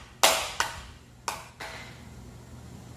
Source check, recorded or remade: recorded